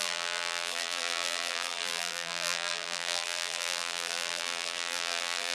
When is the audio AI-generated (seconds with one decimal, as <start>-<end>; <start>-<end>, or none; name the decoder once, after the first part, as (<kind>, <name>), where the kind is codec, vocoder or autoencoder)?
0.0-5.5 (vocoder, BigVGAN v2)